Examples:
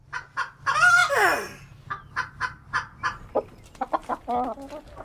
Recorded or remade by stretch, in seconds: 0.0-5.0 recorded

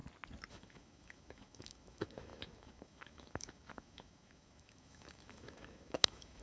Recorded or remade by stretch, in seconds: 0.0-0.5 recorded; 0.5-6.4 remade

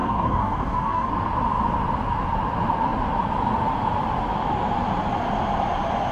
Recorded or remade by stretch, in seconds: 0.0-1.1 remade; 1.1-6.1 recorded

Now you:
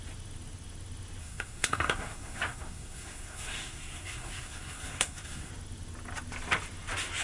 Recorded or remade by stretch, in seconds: 0.0-1.2 recorded; 1.2-5.5 remade; 5.5-7.2 recorded

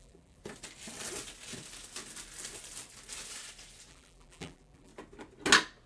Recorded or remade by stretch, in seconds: 0.0-0.4 remade; 0.4-3.9 recorded; 3.9-4.9 remade; 4.9-5.9 recorded